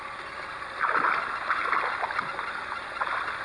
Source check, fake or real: real